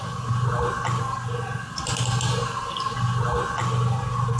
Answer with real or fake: real